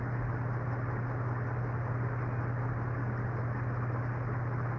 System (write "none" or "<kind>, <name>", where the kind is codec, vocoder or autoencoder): none